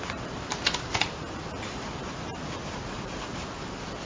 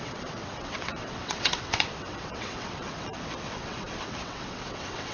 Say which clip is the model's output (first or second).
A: second